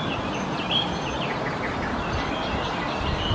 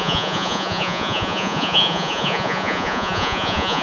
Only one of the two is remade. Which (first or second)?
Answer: second